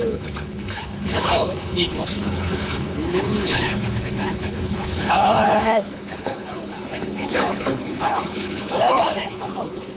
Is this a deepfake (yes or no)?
yes